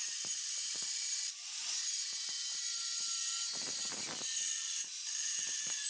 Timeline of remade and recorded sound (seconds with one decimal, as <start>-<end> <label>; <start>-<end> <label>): 0.0-1.6 remade; 1.6-4.0 recorded; 4.0-5.9 remade